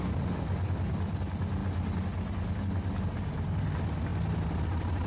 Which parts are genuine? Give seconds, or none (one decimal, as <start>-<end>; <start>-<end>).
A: 0.0-5.1